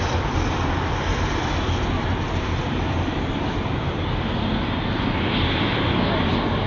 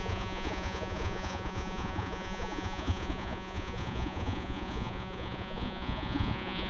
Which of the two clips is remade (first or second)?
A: second